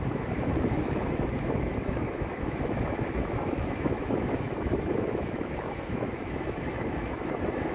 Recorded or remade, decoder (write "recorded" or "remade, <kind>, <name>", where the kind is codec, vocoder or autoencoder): remade, autoencoder, DAC-VAE